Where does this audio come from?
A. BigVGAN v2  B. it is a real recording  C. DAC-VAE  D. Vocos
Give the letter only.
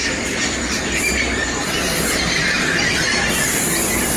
B